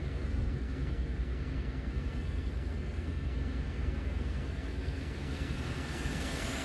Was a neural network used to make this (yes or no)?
yes